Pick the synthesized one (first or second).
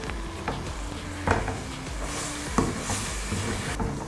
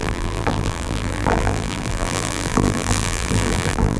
second